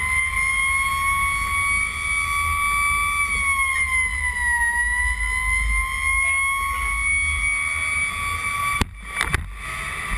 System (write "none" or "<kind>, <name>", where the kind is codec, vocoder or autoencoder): none